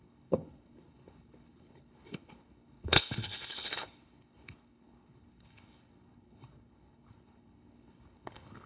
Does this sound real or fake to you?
fake